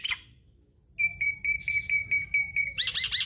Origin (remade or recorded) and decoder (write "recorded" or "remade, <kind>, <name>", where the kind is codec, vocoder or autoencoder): recorded